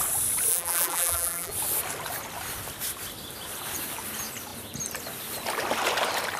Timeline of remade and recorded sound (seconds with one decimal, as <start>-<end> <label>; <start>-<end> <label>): 0.0-0.5 recorded; 0.5-1.5 remade; 1.5-6.4 recorded